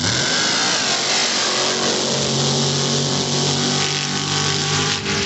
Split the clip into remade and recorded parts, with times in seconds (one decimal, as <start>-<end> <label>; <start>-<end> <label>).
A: 0.0-5.3 recorded